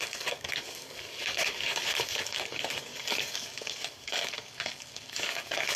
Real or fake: fake